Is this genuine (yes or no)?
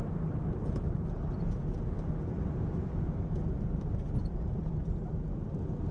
yes